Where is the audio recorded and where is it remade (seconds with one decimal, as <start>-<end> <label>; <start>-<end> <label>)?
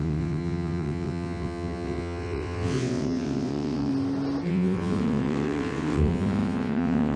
0.0-3.9 remade; 3.9-4.5 recorded; 4.5-7.2 remade